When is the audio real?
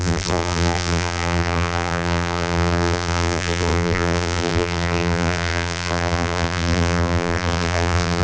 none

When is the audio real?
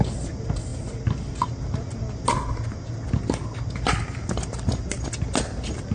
0.0-5.9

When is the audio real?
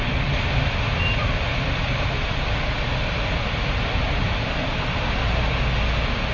0.0-6.3